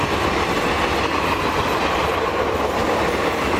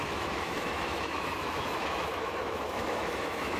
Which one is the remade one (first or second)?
second